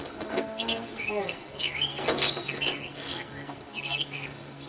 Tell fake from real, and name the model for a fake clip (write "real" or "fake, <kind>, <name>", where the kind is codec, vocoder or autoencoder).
fake, codec, SNAC